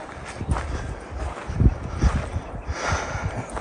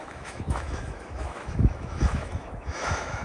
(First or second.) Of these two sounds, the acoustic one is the first